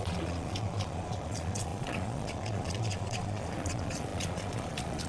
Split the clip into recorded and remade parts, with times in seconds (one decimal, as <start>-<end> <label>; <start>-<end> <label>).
0.0-5.1 remade